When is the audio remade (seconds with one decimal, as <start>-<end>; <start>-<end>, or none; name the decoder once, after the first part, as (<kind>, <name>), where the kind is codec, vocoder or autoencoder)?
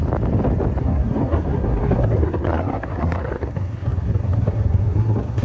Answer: 0.8-5.4 (codec, SNAC)